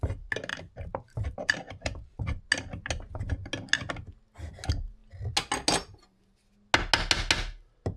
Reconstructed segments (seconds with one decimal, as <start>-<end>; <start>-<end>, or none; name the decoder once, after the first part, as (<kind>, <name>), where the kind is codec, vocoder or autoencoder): 0.5-2.4 (vocoder, BigVGAN v2)